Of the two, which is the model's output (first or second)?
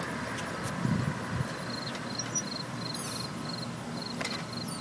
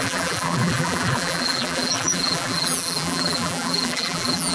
second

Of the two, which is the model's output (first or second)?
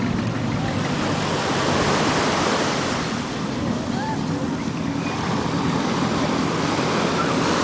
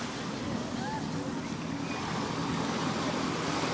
first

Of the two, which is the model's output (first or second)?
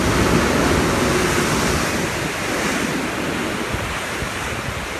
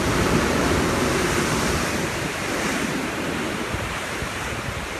second